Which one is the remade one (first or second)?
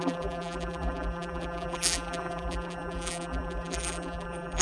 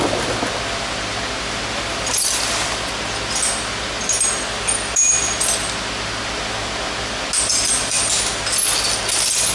first